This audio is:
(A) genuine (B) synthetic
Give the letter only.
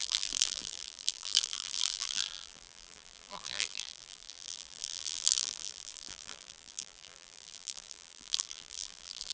B